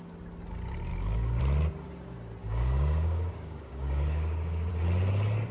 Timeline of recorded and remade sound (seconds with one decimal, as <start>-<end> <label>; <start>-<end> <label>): 0.0-0.9 recorded; 0.9-1.4 remade; 1.4-2.4 recorded; 2.4-4.7 remade; 4.7-5.5 recorded